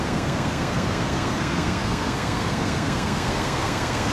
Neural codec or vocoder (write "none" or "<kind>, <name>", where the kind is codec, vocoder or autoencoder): codec, SNAC